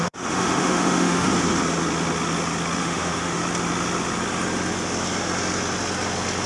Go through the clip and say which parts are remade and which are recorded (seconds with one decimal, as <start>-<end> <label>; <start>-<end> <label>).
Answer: 0.0-1.3 remade; 1.3-2.8 recorded; 2.8-3.4 remade; 3.4-6.5 recorded